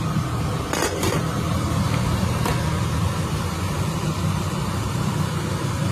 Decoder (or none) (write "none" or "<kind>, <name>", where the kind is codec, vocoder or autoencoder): vocoder, BigVGAN v2